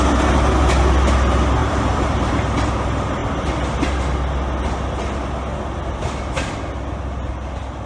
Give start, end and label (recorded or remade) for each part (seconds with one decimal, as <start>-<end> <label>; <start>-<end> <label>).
0.0-1.6 recorded; 1.6-2.4 remade; 2.4-7.9 recorded